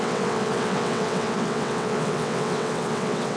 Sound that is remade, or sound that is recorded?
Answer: remade